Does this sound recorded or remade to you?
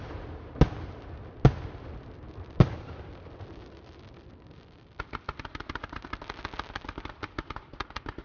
recorded